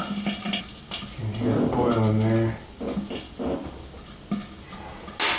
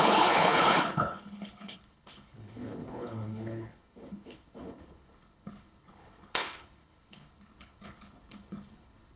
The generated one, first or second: second